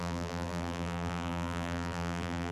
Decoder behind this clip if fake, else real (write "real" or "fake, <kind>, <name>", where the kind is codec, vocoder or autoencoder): fake, vocoder, BigVGAN v2